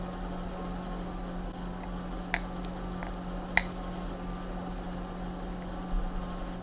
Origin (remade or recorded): recorded